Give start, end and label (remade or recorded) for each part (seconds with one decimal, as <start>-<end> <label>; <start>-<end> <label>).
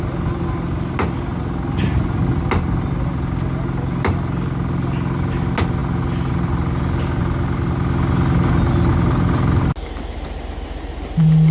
0.0-11.5 recorded